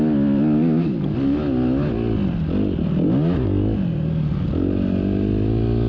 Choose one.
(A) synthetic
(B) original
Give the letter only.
B